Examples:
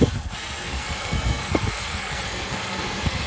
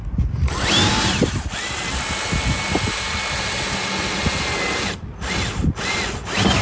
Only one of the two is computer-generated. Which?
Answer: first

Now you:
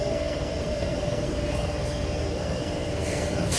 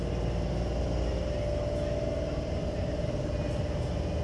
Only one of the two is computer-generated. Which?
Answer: first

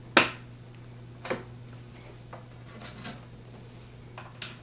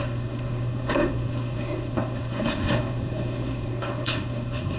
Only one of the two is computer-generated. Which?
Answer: second